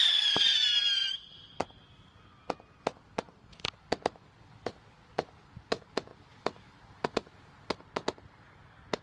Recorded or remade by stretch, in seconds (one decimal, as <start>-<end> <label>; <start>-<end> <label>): 0.0-9.0 recorded